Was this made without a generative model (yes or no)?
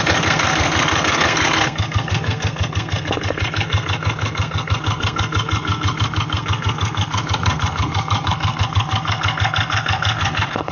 no